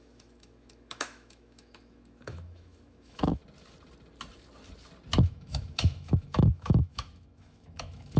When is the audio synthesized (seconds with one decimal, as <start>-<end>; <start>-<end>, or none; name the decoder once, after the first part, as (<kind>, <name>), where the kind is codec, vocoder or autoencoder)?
0.0-3.4 (autoencoder, DAC-VAE); 5.2-8.2